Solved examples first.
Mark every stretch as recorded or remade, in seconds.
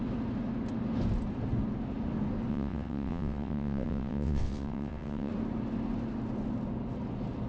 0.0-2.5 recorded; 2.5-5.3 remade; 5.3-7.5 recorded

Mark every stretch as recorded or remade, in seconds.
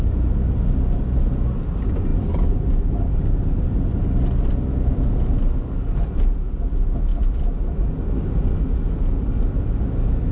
0.0-10.3 recorded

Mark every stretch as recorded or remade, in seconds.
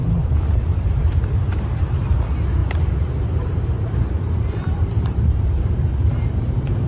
0.0-6.9 remade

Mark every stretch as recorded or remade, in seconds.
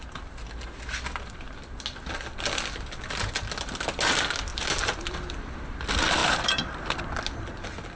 0.0-4.5 recorded; 4.5-5.8 remade; 5.8-6.2 recorded; 6.2-6.8 remade; 6.8-8.0 recorded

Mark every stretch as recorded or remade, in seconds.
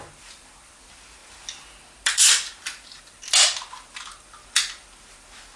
0.0-5.6 recorded